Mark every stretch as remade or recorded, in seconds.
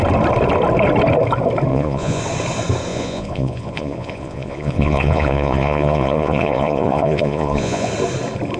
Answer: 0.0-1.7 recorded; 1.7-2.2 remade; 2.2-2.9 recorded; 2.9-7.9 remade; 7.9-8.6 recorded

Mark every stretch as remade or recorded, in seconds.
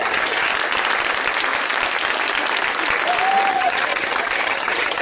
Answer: 0.0-0.5 remade; 0.5-3.5 recorded; 3.5-5.0 remade